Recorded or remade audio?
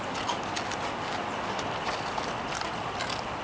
recorded